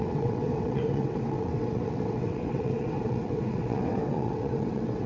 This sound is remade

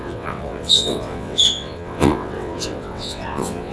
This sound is remade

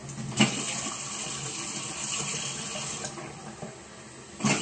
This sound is recorded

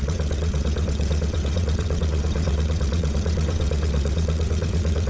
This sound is remade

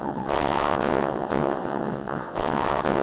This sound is remade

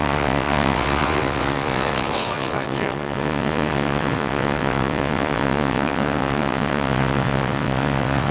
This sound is remade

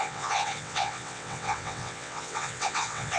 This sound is remade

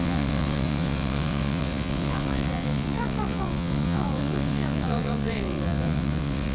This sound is remade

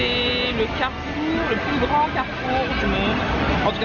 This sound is recorded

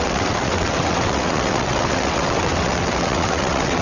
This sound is remade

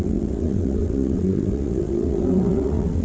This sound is remade